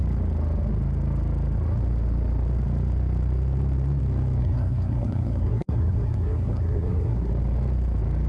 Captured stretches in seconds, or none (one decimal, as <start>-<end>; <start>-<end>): 0.0-4.4; 7.3-8.3